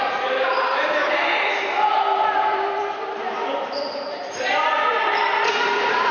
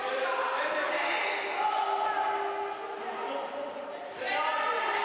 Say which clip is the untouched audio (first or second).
second